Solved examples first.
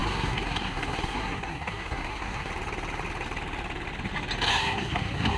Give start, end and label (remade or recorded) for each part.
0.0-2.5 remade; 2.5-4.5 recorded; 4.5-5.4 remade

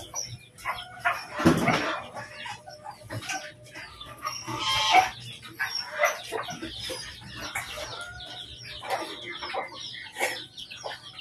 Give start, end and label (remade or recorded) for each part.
0.0-3.9 recorded; 3.9-4.6 remade; 4.6-11.2 recorded

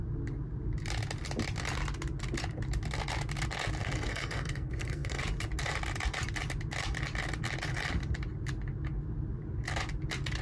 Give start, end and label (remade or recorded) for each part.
0.0-3.8 recorded; 3.8-5.2 remade; 5.2-10.4 recorded